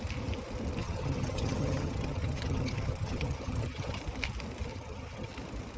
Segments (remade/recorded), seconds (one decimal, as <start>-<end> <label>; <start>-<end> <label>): 0.0-0.8 recorded; 0.8-4.0 remade; 4.0-4.7 recorded; 4.7-5.3 remade; 5.3-5.8 recorded